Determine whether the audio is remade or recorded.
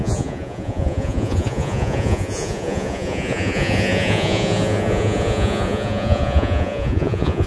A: remade